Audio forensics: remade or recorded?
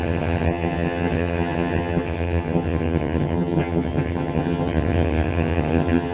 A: remade